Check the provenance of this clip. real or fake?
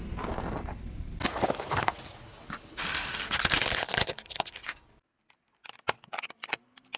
real